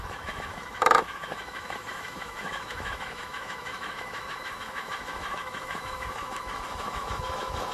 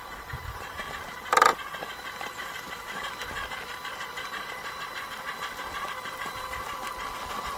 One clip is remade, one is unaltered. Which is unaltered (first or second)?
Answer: second